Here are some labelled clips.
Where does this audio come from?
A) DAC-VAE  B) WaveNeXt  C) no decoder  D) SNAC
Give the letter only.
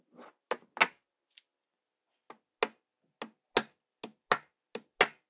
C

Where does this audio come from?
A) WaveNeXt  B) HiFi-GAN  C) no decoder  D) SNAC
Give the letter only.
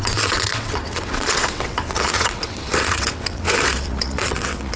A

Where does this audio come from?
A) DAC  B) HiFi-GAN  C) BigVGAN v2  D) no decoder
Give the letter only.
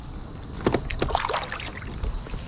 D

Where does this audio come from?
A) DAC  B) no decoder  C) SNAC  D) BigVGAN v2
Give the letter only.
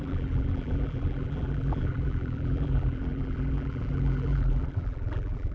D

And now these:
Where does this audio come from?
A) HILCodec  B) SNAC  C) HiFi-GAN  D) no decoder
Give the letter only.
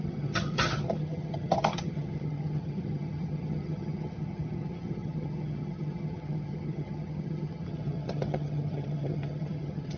C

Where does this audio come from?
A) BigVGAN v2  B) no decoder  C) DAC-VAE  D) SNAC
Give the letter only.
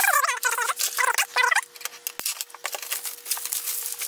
B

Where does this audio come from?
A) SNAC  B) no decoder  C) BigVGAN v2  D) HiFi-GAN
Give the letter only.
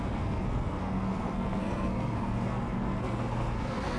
A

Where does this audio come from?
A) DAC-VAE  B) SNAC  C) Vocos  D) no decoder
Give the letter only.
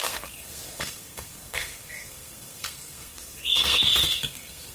B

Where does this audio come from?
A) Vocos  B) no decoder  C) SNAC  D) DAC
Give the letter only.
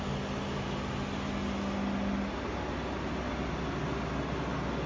B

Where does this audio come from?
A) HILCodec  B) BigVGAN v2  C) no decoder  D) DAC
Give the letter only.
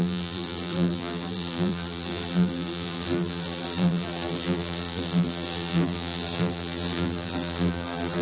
B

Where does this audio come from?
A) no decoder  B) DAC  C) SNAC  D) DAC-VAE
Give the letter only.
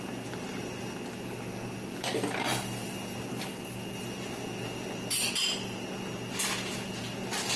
A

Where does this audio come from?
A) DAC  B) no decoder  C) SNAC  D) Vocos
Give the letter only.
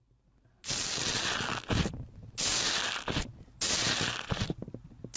B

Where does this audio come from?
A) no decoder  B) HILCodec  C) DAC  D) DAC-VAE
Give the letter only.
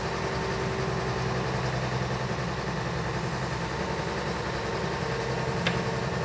A